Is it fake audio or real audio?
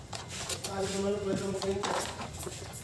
fake